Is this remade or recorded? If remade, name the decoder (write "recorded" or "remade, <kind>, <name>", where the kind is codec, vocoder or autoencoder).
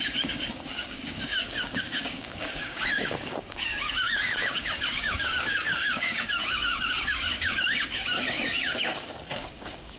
remade, codec, DAC